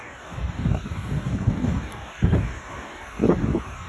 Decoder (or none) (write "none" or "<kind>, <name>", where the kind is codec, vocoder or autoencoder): codec, DAC